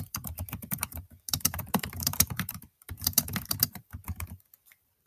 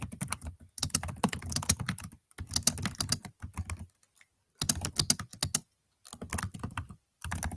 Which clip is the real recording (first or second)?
second